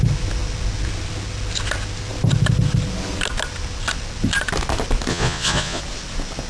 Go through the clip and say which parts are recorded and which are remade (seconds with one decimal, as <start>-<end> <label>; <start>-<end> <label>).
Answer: 0.0-5.1 recorded; 5.1-5.8 remade; 5.8-6.5 recorded